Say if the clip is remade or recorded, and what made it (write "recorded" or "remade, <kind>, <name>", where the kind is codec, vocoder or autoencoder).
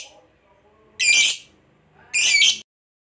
recorded